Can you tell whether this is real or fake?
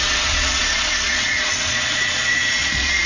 fake